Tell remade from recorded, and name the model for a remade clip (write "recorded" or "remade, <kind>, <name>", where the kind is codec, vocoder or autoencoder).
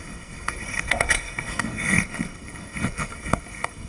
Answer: remade, codec, SNAC